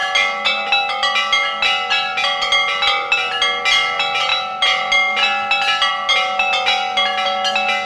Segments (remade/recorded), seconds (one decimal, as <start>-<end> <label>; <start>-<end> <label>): 0.0-7.9 recorded